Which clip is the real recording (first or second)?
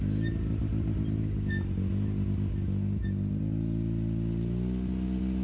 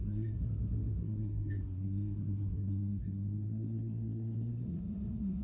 first